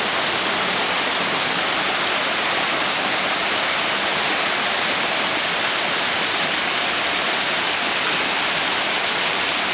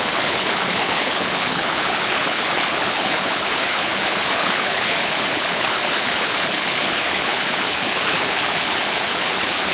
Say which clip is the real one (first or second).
first